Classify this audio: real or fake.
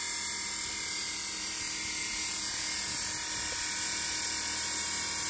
real